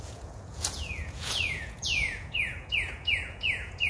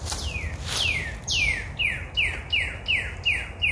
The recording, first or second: second